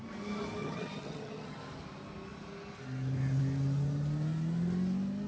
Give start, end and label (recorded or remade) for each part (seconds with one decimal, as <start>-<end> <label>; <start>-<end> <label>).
0.0-0.6 recorded; 0.6-1.6 remade; 1.6-5.3 recorded